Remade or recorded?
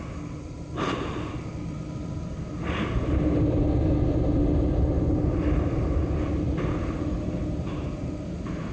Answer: recorded